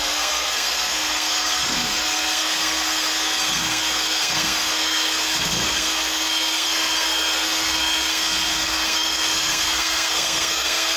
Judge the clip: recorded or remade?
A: remade